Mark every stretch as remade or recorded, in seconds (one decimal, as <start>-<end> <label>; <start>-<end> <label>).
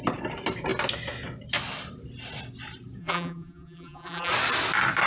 0.0-3.0 recorded; 3.0-4.3 remade; 4.3-5.1 recorded